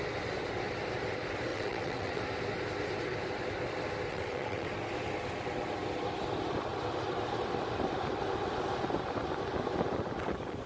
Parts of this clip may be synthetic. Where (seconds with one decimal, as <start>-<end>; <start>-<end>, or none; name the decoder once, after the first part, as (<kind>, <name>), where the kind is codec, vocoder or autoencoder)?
1.5-2.2 (vocoder, WaveNeXt); 4.1-4.7